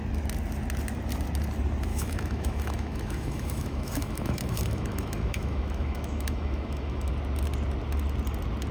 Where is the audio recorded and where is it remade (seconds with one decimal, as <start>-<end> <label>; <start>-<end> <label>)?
0.0-1.9 recorded; 1.9-7.1 remade; 7.1-8.7 recorded